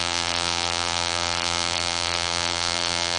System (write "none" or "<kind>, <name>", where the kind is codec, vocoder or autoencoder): vocoder, BigVGAN v2